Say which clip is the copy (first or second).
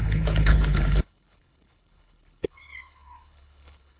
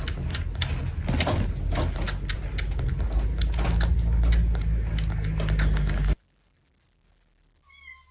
first